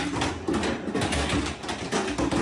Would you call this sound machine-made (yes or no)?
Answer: no